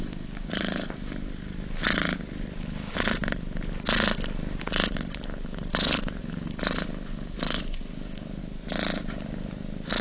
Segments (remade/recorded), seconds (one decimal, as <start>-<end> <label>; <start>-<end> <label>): 0.0-1.5 remade; 1.5-6.2 recorded; 6.2-8.4 remade; 8.4-10.0 recorded